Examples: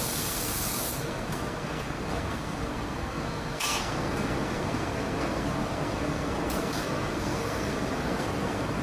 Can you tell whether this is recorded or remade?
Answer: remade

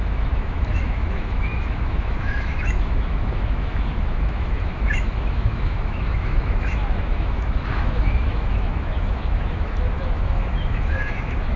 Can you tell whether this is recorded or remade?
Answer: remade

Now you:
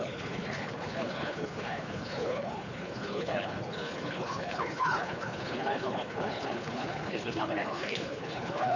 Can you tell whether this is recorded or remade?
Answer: remade